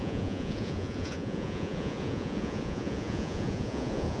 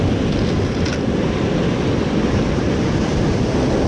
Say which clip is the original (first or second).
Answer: second